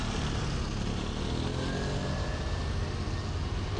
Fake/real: real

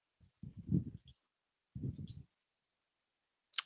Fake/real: real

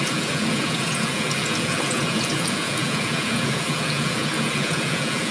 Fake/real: fake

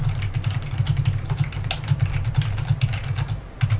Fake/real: real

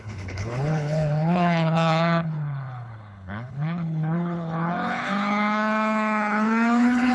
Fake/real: fake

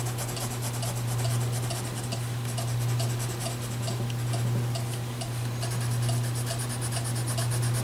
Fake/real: real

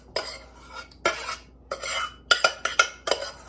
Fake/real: real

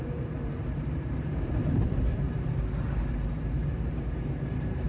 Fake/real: fake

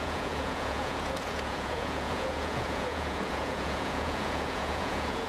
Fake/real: fake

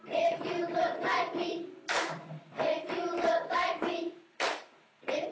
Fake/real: fake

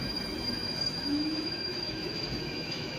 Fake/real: fake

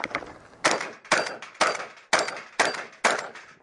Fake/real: real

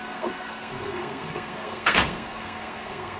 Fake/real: fake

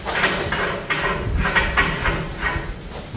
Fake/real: real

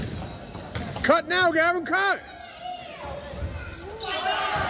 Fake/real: real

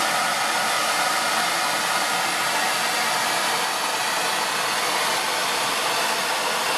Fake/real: real